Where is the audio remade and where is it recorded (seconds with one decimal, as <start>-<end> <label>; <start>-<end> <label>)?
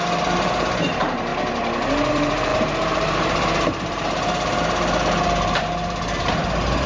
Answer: 0.0-1.3 remade; 1.3-2.1 recorded; 2.1-6.9 remade